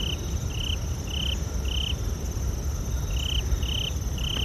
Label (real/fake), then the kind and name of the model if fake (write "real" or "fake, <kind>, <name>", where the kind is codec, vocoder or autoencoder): real